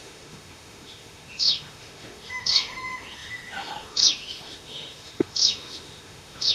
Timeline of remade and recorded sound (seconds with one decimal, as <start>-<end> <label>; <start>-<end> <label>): 0.0-6.5 remade